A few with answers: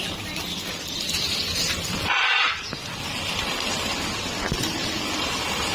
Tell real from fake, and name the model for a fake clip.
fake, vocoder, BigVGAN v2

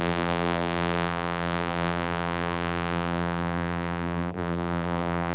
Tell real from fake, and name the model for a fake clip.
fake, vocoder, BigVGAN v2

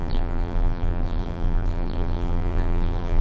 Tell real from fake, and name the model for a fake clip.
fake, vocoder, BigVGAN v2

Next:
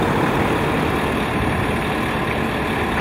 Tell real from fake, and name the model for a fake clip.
fake, vocoder, BigVGAN v2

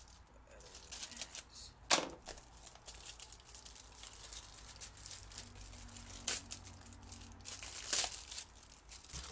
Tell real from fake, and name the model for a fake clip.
real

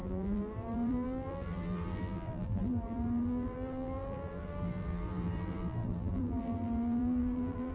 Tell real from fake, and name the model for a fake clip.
fake, vocoder, BigVGAN v2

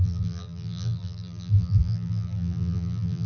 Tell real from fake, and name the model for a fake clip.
fake, vocoder, BigVGAN v2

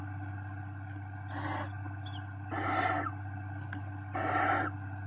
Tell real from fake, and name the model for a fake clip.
real